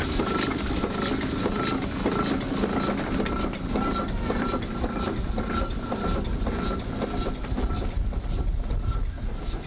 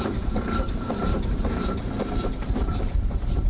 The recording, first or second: first